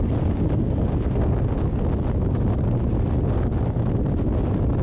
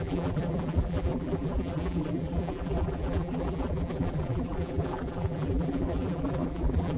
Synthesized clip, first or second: second